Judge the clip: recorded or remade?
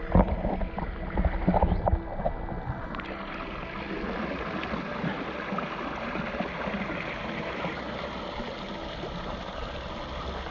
recorded